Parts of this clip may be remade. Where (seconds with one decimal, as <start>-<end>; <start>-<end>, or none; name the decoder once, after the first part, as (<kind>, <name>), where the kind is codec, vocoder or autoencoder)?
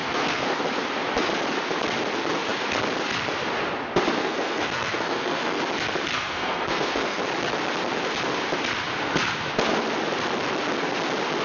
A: 0.0-0.6 (codec, SNAC); 4.2-5.6; 6.1-7.2